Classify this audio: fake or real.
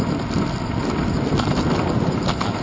real